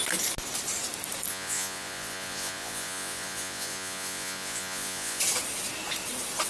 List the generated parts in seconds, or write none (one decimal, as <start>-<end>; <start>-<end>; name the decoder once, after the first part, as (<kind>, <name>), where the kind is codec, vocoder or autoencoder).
1.3-5.2 (vocoder, Vocos)